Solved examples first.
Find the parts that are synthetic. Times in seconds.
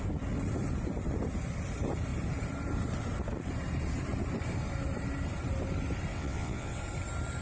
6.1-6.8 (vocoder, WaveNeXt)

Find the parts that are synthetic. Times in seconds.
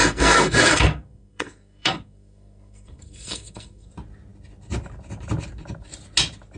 0.0-3.9 (codec, SNAC)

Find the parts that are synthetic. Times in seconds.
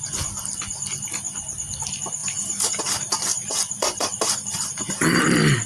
3.3-4.7 (vocoder, BigVGAN v2)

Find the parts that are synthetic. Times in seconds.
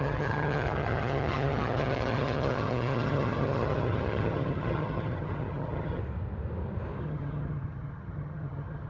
0.0-6.0 (vocoder, HiFi-GAN); 7.0-8.9